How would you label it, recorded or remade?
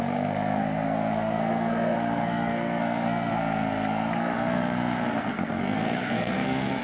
remade